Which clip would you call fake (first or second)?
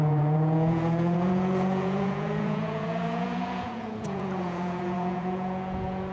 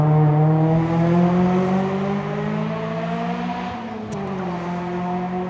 first